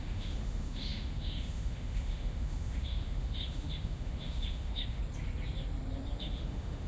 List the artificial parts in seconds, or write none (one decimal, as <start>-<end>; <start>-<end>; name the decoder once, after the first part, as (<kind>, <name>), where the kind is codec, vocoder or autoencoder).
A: 0.0-5.0 (autoencoder, DAC-VAE); 6.2-6.9